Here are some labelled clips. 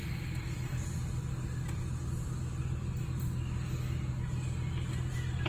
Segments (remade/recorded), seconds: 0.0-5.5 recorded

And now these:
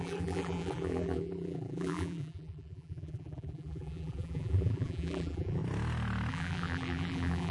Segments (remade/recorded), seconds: 0.0-5.6 remade; 5.6-6.3 recorded; 6.3-7.5 remade